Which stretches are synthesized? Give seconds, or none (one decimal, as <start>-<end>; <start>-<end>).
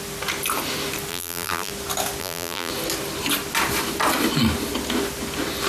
1.1-1.7; 2.2-2.7